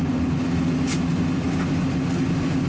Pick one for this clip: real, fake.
real